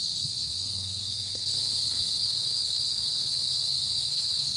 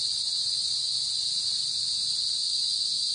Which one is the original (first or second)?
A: second